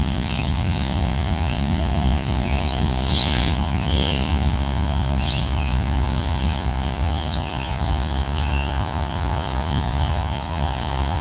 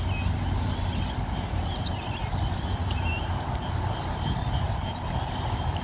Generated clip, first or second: first